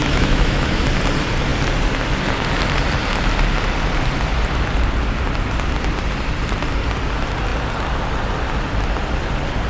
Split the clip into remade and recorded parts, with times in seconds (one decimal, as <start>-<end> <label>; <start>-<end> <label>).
0.0-0.9 remade; 0.9-9.7 recorded

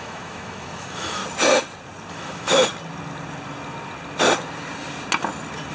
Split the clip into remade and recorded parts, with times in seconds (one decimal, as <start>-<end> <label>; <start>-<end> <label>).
0.0-1.2 remade; 1.2-2.1 recorded; 2.1-2.6 remade; 2.6-5.7 recorded